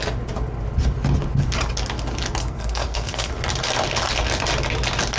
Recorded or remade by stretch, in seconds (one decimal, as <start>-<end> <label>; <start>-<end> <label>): 0.0-2.4 recorded; 2.4-3.3 remade; 3.3-5.2 recorded